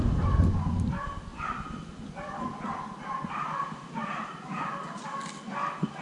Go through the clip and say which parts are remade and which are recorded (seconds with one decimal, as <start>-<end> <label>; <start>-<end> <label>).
0.0-1.3 recorded; 1.3-1.8 remade; 1.8-6.0 recorded